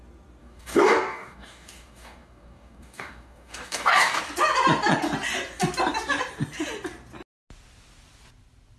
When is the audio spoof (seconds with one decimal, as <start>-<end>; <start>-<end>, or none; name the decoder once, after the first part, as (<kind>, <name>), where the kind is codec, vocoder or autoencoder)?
0.4-4.2 (codec, DAC)